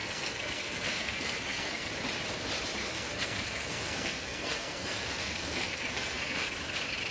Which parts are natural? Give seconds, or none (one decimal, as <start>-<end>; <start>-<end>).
1.9-2.8; 6.5-7.1